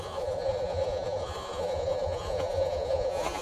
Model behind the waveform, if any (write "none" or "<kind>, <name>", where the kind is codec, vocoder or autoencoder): vocoder, Vocos